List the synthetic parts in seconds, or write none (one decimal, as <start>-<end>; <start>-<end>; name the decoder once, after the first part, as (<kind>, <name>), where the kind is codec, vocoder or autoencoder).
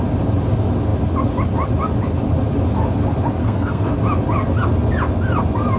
3.4-3.9 (codec, SNAC)